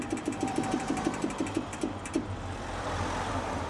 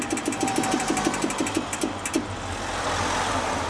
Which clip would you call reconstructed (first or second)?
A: first